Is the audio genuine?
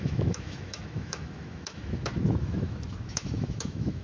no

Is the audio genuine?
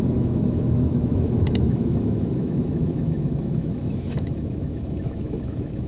no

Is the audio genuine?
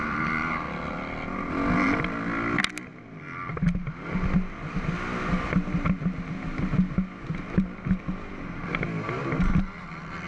yes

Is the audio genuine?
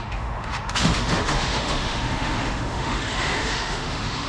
no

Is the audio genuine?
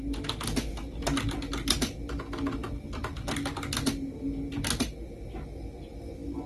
yes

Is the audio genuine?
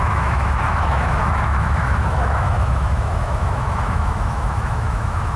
no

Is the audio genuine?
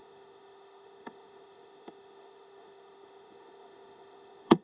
no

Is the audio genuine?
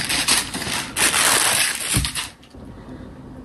yes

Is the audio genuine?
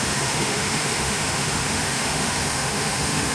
no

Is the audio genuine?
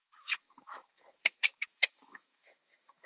no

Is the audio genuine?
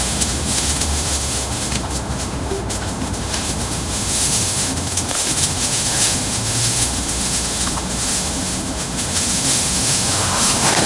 no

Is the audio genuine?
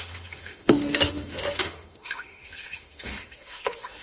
no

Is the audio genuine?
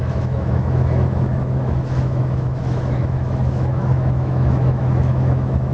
no